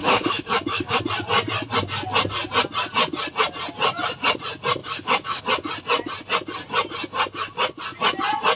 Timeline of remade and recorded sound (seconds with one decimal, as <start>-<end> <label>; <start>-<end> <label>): 0.0-1.0 remade; 1.0-4.8 recorded; 4.8-5.4 remade; 5.4-8.6 recorded